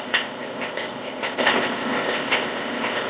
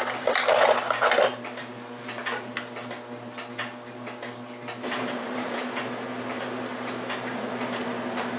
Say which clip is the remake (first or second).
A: first